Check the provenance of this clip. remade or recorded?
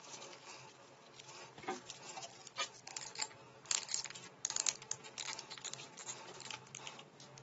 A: recorded